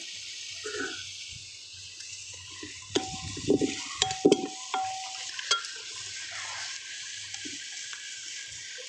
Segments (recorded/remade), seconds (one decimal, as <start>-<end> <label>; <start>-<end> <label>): 0.0-0.5 recorded; 0.5-2.8 remade; 2.8-8.9 recorded